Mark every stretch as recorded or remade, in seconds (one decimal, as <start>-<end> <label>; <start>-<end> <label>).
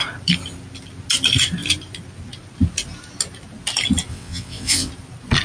0.0-4.1 recorded; 4.1-4.9 remade; 4.9-5.4 recorded